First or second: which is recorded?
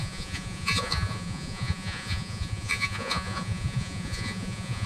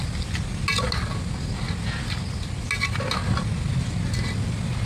second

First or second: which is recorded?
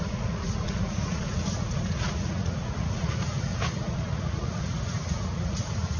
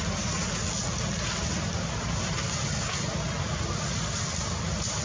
second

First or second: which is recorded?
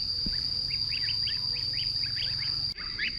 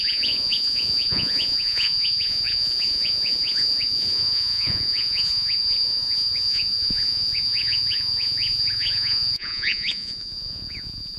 first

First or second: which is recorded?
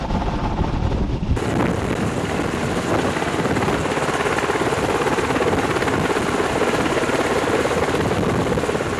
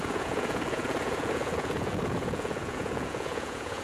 first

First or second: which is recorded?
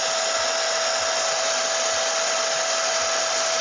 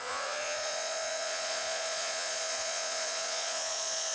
first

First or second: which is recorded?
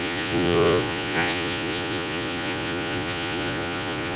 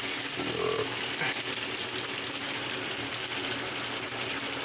second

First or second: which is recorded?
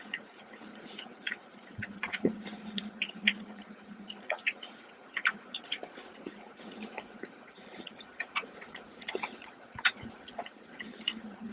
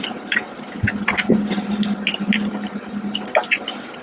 second